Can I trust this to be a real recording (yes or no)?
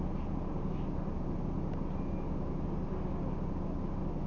yes